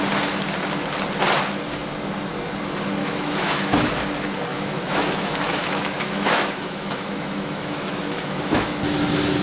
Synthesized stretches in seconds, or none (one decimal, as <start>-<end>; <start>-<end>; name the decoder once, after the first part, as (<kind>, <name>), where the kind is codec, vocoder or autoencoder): 3.0-3.9 (autoencoder, DAC-VAE); 4.5-8.8